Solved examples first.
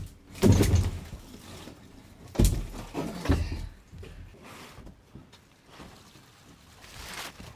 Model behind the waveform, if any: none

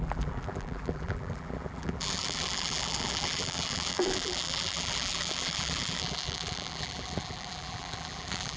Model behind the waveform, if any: vocoder, BigVGAN v2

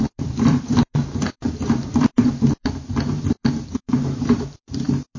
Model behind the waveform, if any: vocoder, BigVGAN v2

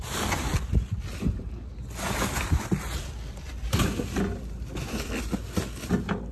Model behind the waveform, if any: none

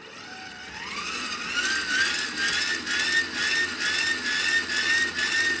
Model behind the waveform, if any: none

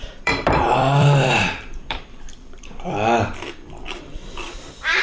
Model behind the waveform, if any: vocoder, BigVGAN v2